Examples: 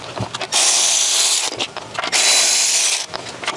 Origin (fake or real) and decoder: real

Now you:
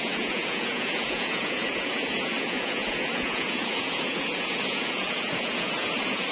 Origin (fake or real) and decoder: fake, vocoder, Vocos